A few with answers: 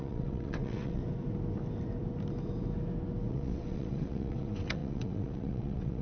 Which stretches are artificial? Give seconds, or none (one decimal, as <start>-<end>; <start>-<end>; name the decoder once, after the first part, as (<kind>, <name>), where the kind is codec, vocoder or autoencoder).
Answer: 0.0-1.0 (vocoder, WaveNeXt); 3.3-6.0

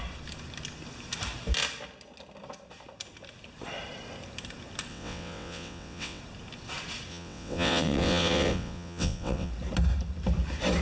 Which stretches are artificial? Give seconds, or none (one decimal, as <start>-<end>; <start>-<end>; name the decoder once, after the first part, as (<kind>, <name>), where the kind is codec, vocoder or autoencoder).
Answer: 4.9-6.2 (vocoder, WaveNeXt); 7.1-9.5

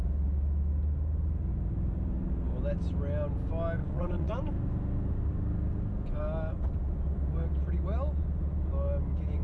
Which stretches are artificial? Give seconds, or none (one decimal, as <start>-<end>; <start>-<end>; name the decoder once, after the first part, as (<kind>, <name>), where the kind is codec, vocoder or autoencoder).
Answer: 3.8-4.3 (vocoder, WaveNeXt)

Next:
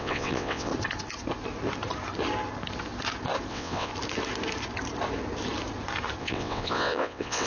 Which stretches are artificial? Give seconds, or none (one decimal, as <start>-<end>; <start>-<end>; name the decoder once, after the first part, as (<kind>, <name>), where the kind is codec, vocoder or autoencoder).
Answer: 0.0-0.7 (vocoder, WaveNeXt); 3.5-3.9; 6.2-7.5

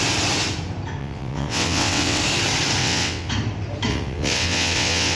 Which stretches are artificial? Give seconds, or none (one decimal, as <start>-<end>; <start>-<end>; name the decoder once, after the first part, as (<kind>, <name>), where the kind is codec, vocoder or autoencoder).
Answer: 1.0-2.2 (vocoder, WaveNeXt); 2.8-3.3; 3.9-5.2